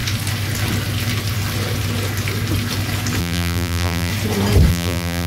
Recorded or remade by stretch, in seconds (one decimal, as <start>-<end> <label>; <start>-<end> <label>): 0.0-3.2 recorded; 3.2-4.1 remade; 4.1-4.7 recorded; 4.7-5.3 remade

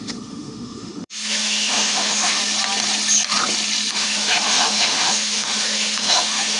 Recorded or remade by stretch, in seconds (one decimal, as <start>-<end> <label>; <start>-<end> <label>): 0.0-2.4 remade; 2.4-3.9 recorded; 3.9-6.6 remade

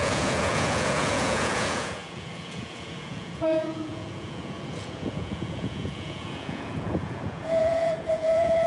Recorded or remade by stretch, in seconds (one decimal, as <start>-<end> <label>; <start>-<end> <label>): 0.0-8.7 remade

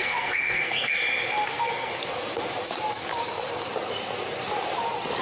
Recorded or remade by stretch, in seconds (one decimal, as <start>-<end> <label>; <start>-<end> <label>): 0.0-1.0 remade; 1.0-1.5 recorded; 1.5-1.9 remade; 1.9-5.2 recorded

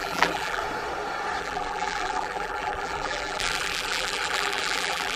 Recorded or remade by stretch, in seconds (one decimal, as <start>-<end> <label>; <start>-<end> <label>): 0.0-0.6 remade; 0.6-1.4 recorded; 1.4-5.2 remade

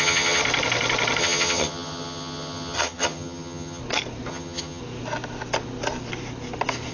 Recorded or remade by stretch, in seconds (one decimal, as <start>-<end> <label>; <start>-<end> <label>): 0.0-0.4 remade; 0.4-1.2 recorded; 1.2-3.8 remade; 3.8-4.3 recorded; 4.3-4.8 remade; 4.8-6.9 recorded

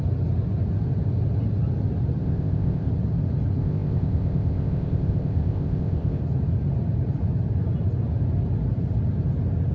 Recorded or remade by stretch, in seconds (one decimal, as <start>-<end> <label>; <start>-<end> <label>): 0.0-2.2 recorded; 2.2-2.9 remade; 2.9-3.6 recorded; 3.6-6.2 remade; 6.2-9.7 recorded